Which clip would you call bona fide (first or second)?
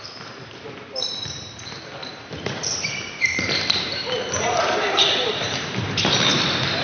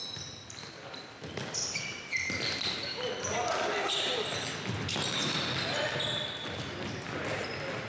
second